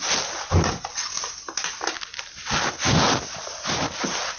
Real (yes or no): yes